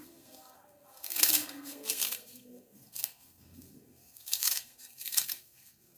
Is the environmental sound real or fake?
fake